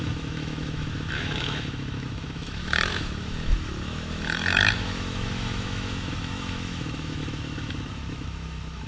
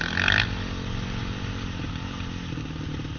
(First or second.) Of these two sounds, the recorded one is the second